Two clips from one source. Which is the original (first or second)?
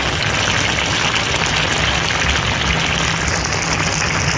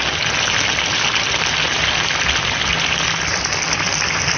first